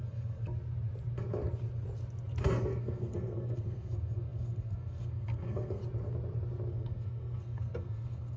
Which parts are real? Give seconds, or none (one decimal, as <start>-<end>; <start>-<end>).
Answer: 0.4-2.4; 5.8-6.7